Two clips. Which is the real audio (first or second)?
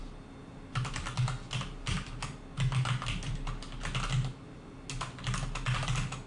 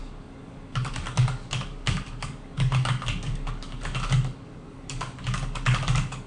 first